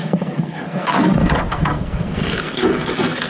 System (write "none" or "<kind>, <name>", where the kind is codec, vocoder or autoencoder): codec, SNAC